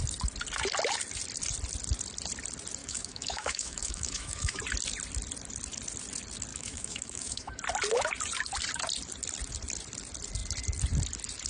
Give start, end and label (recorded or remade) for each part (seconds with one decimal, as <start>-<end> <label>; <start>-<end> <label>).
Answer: 0.0-2.8 recorded; 2.8-4.6 remade; 4.6-6.5 recorded; 6.5-7.5 remade; 7.5-11.5 recorded